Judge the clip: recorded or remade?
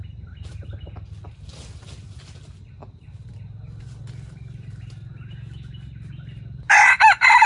recorded